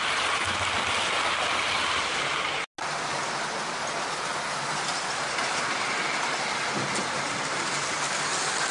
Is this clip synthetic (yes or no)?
no